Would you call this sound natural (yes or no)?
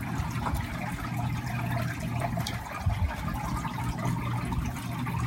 yes